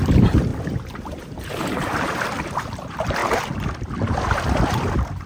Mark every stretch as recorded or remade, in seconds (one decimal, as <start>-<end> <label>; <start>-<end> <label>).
0.0-3.2 remade; 3.2-4.4 recorded; 4.4-5.3 remade